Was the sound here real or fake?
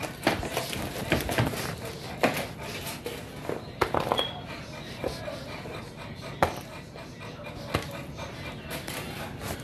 real